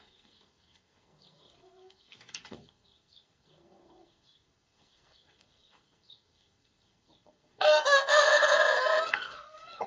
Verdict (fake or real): fake